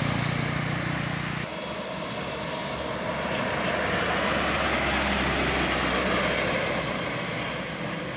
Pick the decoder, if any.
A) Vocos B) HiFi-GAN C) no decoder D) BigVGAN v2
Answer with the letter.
C